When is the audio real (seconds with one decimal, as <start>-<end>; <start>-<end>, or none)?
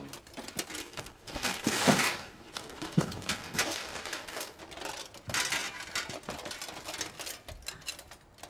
0.0-0.8; 4.6-8.5